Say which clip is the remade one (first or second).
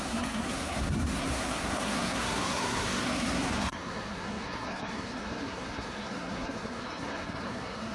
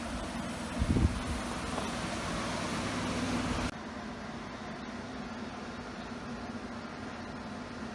first